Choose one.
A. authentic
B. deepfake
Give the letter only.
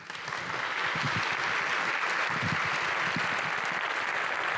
A